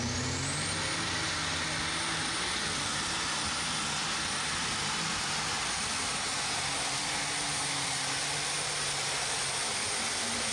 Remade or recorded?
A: recorded